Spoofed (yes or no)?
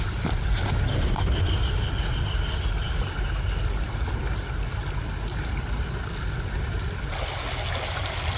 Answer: no